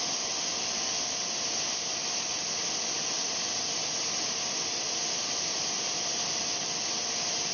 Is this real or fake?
real